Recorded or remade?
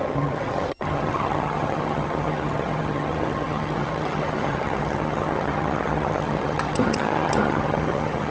remade